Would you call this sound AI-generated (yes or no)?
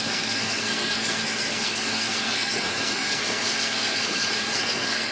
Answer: yes